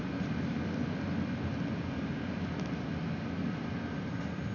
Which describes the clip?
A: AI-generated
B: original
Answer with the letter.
B